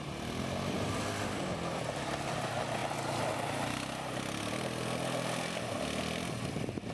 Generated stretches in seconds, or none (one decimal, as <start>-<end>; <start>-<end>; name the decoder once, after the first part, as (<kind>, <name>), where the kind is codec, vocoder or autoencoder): 0.0-6.9 (vocoder, BigVGAN v2)